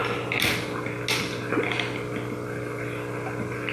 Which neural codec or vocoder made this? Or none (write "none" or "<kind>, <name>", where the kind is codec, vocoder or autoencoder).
none